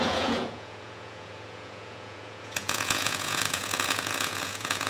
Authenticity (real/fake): fake